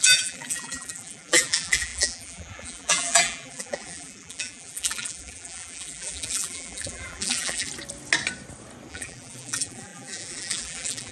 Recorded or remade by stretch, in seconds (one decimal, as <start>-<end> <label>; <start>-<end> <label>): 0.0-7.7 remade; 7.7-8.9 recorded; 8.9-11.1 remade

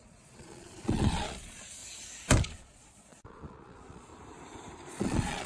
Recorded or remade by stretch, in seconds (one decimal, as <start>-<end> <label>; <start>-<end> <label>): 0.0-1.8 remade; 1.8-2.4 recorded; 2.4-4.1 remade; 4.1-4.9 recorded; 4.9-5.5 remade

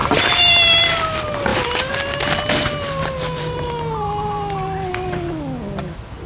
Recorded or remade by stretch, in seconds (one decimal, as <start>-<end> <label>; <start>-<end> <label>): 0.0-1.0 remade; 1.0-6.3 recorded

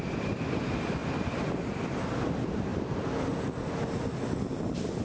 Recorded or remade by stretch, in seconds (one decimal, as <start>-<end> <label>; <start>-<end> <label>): 0.0-5.0 recorded

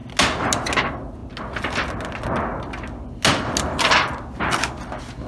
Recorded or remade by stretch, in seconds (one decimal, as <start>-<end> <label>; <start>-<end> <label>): 0.0-5.3 recorded

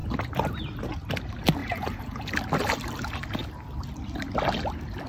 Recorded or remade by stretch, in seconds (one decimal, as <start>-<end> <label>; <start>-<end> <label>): 0.0-1.6 recorded; 1.6-2.3 remade; 2.3-5.1 recorded

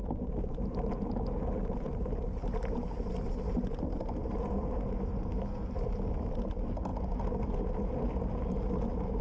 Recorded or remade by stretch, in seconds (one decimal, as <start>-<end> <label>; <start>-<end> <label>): 0.0-9.2 recorded

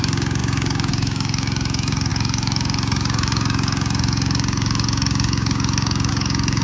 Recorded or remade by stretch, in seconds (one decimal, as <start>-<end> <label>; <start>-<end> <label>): 0.0-6.6 remade